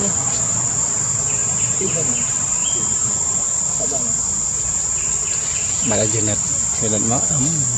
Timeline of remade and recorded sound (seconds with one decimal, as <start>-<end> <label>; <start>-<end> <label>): 0.0-1.4 recorded; 1.4-3.4 remade; 3.4-7.8 recorded